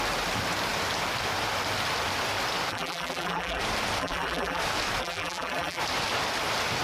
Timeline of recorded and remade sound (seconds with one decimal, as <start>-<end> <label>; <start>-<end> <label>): 0.0-2.7 recorded; 2.7-3.6 remade; 3.6-4.0 recorded; 4.0-4.6 remade; 4.6-5.0 recorded; 5.0-5.8 remade; 5.8-6.8 recorded